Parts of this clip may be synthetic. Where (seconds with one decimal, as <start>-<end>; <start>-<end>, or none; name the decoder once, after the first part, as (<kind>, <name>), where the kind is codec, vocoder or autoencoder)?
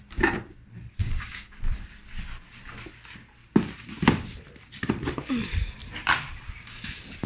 1.0-1.6 (codec, DAC)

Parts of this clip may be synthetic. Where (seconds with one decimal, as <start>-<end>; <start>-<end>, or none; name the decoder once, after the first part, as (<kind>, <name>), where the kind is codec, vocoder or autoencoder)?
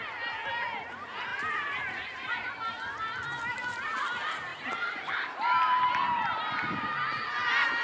1.3-2.3 (vocoder, BigVGAN v2); 4.5-5.2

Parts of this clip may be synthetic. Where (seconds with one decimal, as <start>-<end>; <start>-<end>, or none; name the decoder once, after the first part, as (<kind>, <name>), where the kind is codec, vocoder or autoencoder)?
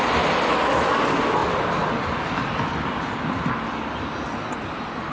1.4-3.5 (vocoder, BigVGAN v2)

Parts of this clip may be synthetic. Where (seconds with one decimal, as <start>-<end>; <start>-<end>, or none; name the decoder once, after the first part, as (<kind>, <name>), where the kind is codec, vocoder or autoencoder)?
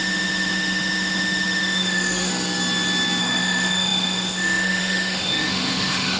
0.0-2.3 (autoencoder, DAC-VAE); 3.2-6.2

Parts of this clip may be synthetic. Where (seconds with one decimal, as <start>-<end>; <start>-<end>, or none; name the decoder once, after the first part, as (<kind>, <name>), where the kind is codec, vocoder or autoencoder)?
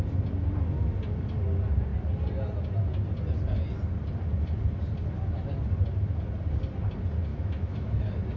7.3-8.0 (autoencoder, DAC-VAE)